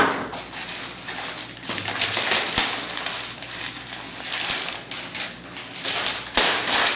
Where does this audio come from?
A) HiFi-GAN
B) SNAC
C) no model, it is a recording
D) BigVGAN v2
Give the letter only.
C